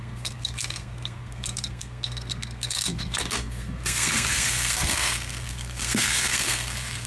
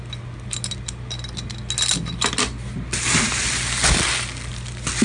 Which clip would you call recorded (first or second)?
second